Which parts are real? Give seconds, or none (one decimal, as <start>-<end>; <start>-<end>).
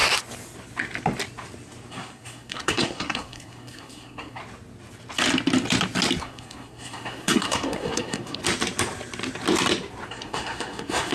0.0-1.9; 4.4-6.2; 8.4-10.1